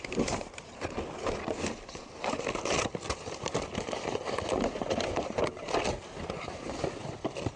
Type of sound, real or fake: real